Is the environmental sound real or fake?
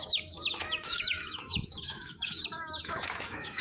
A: fake